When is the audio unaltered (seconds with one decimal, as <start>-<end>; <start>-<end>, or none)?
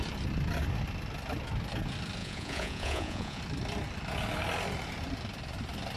0.0-2.2; 3.4-6.0